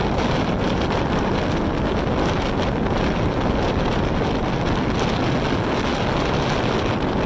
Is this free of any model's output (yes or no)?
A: yes